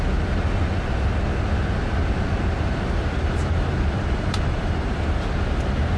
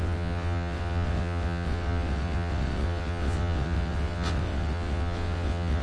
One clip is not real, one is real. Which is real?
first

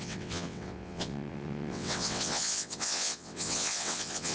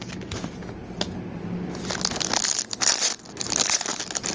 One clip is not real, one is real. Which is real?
second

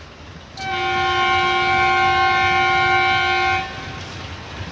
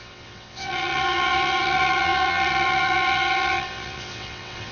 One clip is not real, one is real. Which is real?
first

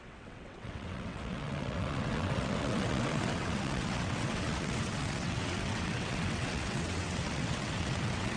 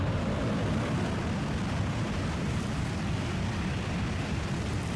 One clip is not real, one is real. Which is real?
second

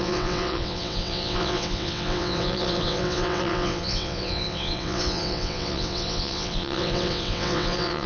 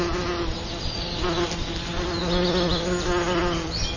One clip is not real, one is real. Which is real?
second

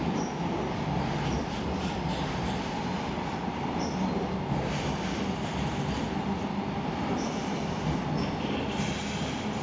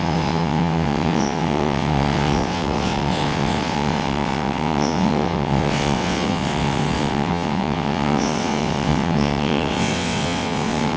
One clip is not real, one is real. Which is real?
first